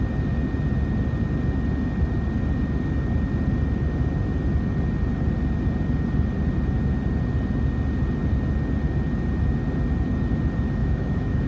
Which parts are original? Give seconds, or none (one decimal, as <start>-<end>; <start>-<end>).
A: 0.0-10.8